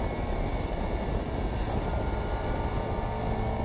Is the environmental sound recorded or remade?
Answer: recorded